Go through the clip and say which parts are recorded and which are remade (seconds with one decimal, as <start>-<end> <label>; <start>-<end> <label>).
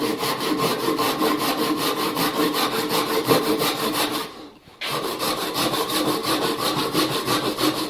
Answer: 0.0-0.7 remade; 0.7-3.4 recorded; 3.4-7.9 remade